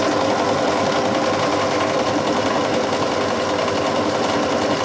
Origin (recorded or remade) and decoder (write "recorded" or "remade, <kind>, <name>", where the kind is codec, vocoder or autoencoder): recorded